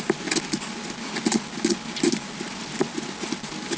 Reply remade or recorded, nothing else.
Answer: recorded